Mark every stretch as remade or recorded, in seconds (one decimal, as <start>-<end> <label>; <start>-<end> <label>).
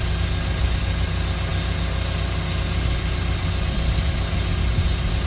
0.0-5.3 recorded